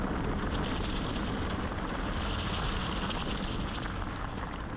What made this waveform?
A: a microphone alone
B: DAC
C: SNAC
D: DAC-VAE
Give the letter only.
A